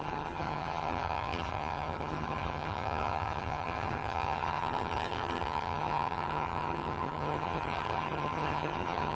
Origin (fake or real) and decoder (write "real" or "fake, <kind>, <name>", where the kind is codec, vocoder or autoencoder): fake, vocoder, HiFi-GAN